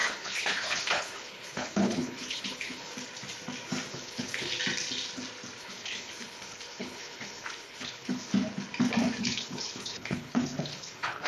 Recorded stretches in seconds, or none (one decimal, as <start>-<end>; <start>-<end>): 2.9-3.9; 4.5-5.6; 8.3-9.2